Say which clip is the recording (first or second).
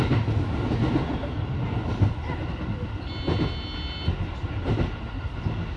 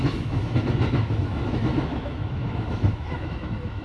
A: first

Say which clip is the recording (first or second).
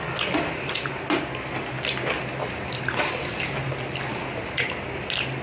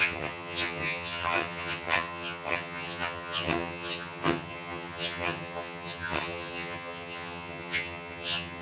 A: first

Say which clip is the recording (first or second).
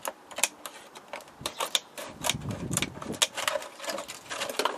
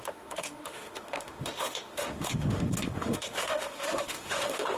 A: first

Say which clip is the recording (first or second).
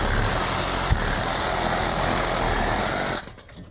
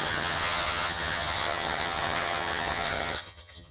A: first